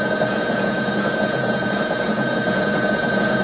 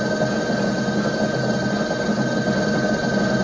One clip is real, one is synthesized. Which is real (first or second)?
second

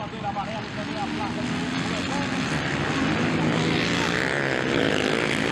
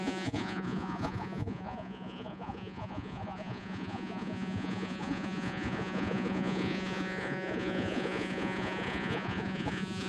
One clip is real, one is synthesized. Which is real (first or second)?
first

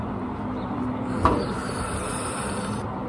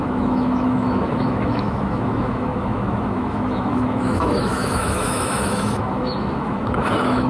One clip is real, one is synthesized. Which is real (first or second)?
first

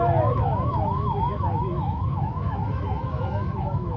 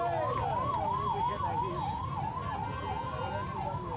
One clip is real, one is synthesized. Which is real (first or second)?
second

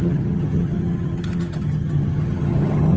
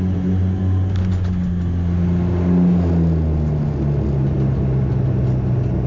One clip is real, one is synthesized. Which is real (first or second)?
second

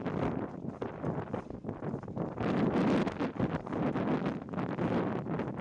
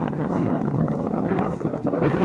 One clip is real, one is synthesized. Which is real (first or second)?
first